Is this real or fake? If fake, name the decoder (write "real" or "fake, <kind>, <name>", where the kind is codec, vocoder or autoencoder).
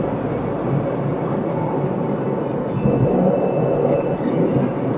real